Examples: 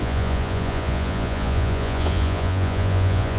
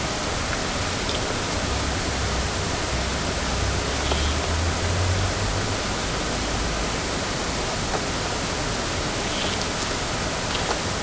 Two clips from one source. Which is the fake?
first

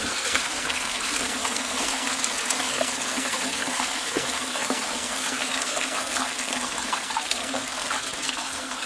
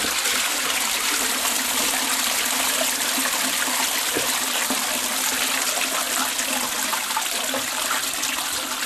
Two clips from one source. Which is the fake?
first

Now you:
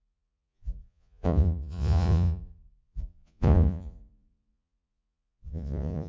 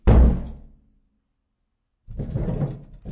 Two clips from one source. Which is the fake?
first